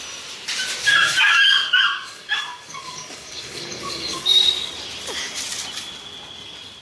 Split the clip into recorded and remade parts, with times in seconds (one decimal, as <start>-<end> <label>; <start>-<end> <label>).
0.0-0.9 recorded; 0.9-4.7 remade; 4.7-6.8 recorded